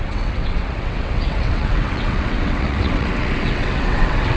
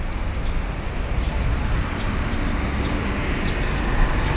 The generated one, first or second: first